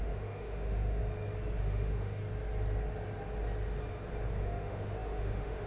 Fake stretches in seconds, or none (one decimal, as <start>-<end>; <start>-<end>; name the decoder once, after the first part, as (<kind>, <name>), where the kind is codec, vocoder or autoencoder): 0.0-1.0 (autoencoder, DAC-VAE); 1.6-2.2; 4.4-5.7